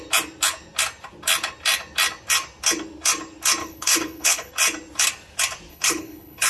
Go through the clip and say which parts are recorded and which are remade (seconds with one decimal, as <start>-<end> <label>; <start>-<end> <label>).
0.0-3.6 recorded; 3.6-4.5 remade; 4.5-5.7 recorded; 5.7-6.5 remade